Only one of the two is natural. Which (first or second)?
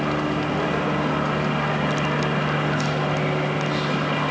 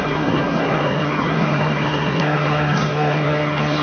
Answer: first